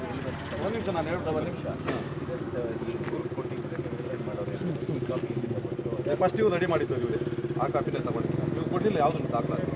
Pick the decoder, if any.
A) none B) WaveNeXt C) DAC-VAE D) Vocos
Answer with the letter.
A